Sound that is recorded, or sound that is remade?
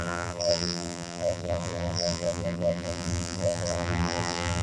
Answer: remade